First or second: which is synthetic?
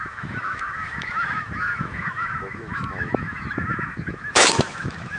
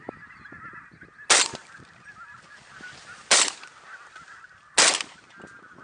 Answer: first